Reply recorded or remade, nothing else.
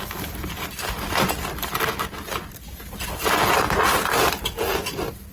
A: recorded